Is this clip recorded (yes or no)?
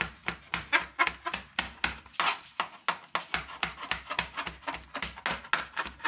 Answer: yes